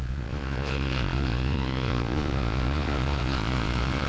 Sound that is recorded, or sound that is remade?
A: remade